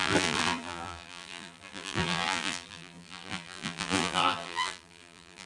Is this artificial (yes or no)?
yes